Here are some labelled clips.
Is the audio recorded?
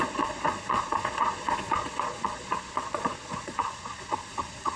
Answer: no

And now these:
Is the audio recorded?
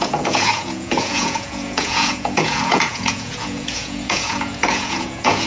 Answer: no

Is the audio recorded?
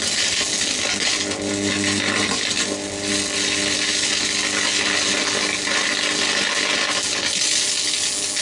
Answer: yes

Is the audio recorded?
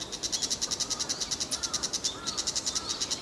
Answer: yes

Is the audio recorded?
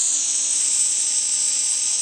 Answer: no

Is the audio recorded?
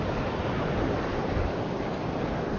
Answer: yes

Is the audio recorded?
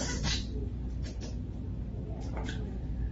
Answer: yes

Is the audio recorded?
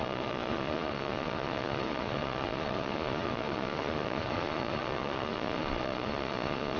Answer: no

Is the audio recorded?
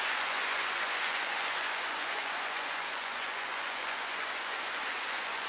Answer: no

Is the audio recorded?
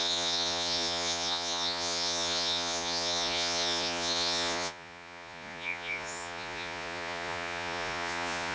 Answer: no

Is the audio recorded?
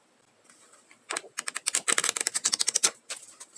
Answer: yes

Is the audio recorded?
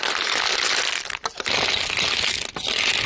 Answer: yes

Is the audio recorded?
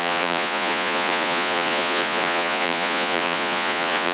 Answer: no